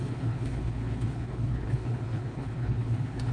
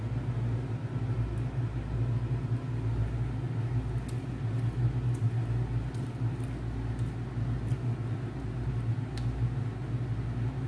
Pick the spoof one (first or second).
first